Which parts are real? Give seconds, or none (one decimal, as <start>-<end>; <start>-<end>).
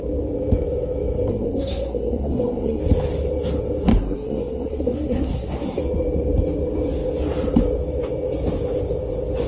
0.0-1.3; 2.8-3.9; 5.8-9.5